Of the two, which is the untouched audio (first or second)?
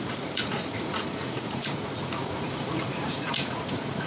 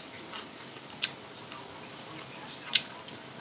second